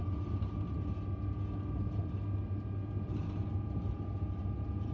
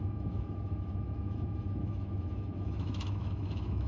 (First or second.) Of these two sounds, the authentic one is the first